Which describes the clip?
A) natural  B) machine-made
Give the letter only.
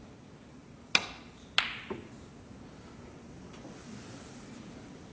A